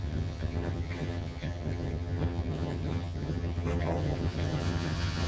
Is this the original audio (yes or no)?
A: no